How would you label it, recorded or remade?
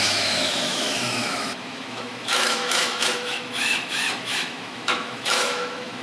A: remade